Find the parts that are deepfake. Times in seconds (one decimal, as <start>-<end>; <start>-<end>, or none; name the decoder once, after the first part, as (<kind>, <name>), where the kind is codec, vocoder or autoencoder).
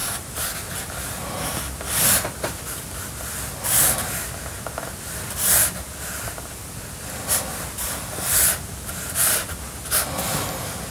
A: 0.0-0.7 (vocoder, BigVGAN v2)